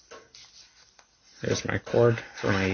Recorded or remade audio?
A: recorded